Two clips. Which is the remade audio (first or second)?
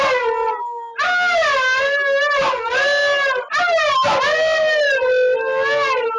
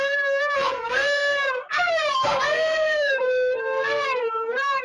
second